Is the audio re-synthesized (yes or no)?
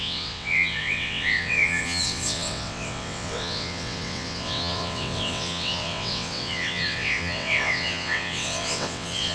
yes